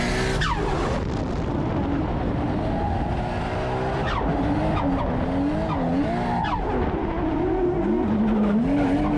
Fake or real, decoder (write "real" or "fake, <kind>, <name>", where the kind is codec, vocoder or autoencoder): real